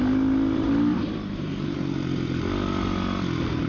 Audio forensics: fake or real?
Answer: real